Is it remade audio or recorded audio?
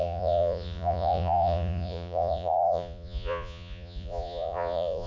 remade